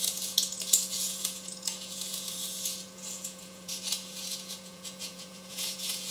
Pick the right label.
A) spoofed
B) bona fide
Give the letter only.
A